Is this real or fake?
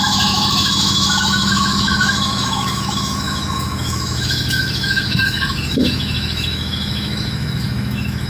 fake